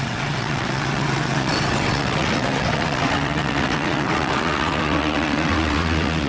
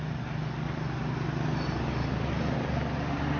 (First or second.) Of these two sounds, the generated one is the first